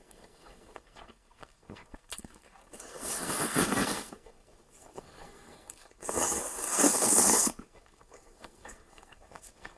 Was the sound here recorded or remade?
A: remade